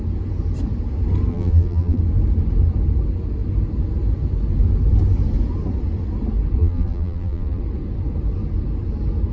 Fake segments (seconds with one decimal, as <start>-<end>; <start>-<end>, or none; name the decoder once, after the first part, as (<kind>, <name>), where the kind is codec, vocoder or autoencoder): 1.3-2.0 (vocoder, BigVGAN v2); 6.6-7.6